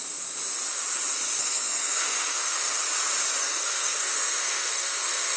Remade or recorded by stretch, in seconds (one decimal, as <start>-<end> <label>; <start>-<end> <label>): 0.0-1.4 recorded; 1.4-2.8 remade; 2.8-3.4 recorded; 3.4-5.4 remade